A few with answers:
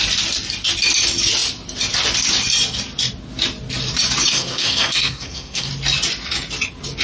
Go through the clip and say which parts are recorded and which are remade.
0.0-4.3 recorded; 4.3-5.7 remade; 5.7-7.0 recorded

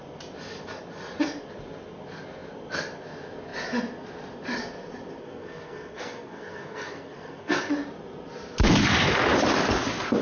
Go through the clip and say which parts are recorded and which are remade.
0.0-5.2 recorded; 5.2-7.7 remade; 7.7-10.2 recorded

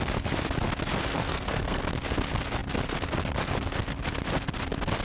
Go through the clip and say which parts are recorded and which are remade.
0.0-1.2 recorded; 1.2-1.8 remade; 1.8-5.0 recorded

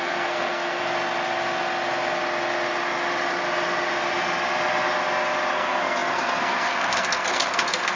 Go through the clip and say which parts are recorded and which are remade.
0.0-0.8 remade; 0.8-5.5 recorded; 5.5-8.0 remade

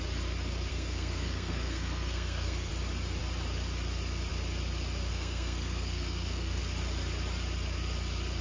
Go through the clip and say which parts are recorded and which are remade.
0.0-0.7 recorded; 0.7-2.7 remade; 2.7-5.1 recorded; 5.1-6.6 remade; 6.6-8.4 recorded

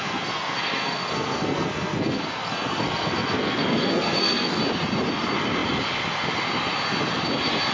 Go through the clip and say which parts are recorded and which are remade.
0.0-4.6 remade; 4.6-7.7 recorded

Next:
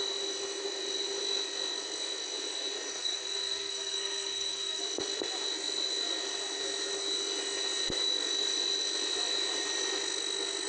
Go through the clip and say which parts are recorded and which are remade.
0.0-2.9 recorded; 2.9-4.8 remade; 4.8-10.7 recorded